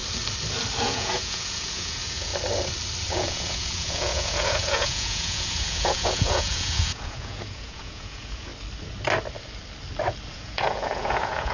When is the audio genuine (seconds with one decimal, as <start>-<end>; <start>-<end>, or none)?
0.0-0.8; 2.3-3.1; 8.5-10.3